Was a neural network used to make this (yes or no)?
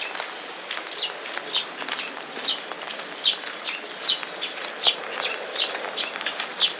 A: no